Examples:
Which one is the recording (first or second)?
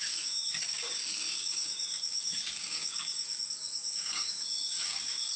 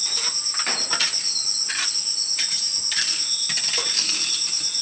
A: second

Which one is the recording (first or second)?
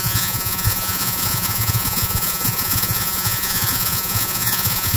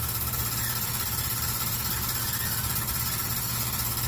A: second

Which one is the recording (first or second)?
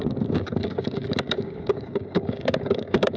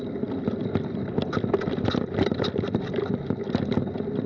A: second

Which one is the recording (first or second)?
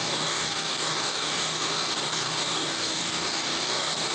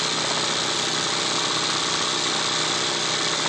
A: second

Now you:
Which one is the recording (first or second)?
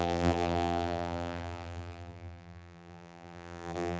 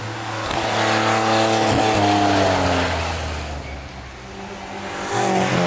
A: second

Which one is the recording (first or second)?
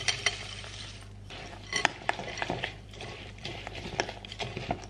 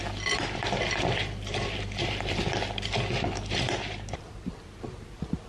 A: second